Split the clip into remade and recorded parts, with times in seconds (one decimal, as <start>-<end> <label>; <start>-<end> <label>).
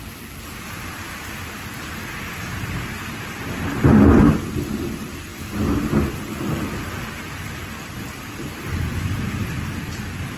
0.0-5.3 remade; 5.3-6.1 recorded; 6.1-10.4 remade